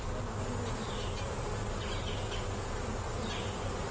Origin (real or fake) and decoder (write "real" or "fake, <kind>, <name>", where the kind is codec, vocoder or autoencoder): real